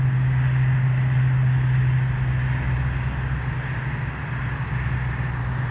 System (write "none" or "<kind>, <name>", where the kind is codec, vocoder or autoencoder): none